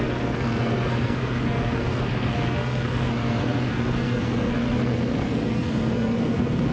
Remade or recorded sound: remade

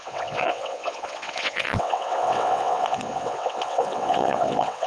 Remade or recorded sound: remade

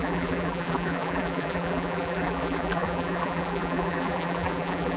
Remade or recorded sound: remade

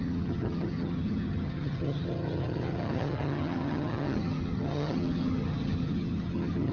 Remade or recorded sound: remade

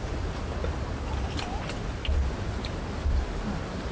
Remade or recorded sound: recorded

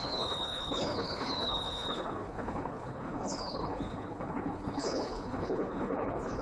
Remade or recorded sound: remade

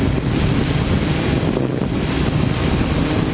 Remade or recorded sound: recorded